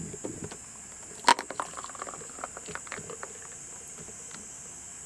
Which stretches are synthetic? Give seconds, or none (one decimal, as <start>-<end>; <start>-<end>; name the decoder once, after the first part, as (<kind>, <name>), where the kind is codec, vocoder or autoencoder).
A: none